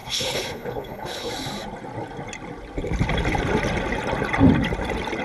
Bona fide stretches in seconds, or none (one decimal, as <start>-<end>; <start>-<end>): 1.3-5.2